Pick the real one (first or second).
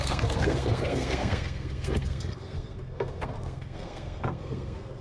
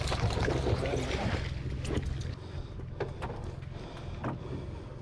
second